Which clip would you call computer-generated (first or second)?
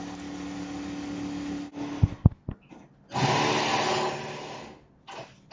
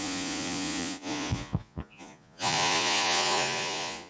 second